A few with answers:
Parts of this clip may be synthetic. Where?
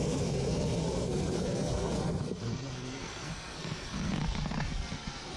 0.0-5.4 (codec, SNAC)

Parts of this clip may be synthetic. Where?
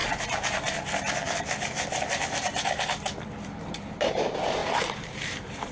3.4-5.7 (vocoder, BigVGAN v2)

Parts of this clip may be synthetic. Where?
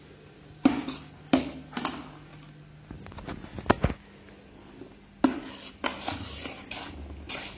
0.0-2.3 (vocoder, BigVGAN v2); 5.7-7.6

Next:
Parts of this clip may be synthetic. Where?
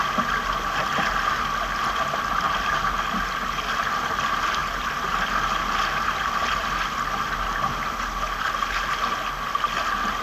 none